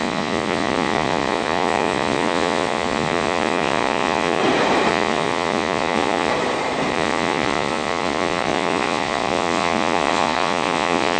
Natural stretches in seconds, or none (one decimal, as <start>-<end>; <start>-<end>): 4.4-4.9; 6.3-6.9